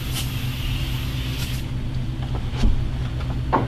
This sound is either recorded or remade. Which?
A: recorded